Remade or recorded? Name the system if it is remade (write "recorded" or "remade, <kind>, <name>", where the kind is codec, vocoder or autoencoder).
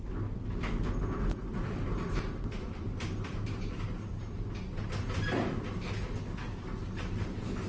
recorded